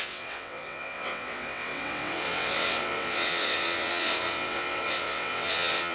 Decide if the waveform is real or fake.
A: fake